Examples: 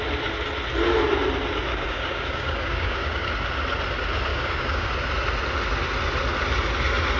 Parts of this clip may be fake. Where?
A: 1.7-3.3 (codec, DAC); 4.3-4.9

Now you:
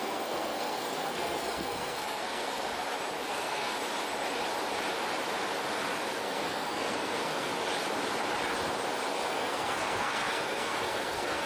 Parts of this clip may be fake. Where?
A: 0.0-2.7 (codec, SNAC); 3.3-3.8; 6.2-7.5; 9.3-11.5